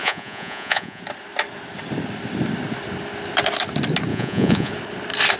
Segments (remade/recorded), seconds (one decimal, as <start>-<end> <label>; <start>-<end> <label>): 0.0-1.0 remade; 1.0-4.1 recorded; 4.1-4.7 remade; 4.7-5.4 recorded